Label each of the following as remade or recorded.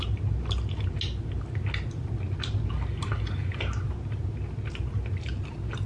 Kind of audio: recorded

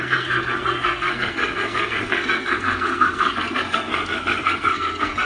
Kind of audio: remade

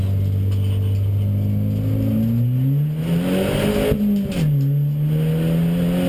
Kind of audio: recorded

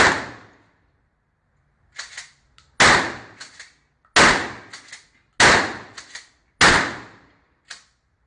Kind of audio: recorded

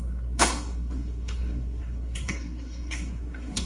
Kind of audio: remade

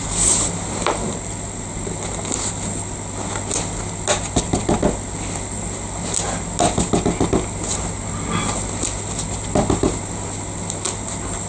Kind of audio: recorded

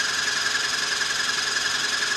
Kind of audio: recorded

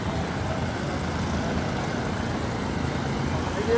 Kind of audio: recorded